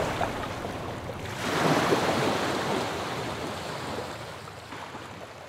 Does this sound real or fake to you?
fake